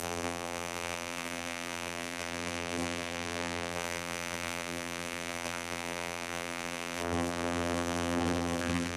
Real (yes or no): no